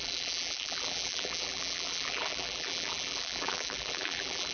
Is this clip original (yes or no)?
no